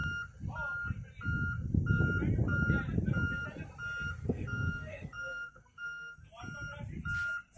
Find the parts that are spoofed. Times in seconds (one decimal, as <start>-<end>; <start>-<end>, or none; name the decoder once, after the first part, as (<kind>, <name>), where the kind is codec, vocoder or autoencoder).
4.2-6.3 (codec, SNAC)